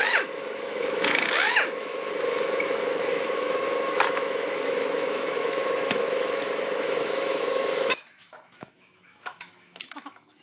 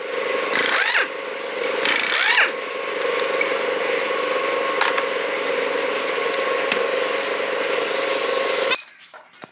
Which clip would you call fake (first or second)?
first